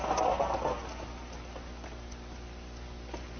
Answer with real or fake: real